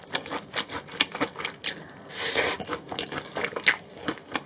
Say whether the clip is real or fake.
real